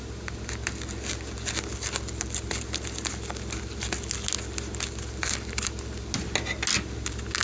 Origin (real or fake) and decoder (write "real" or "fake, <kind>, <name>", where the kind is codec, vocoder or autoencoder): real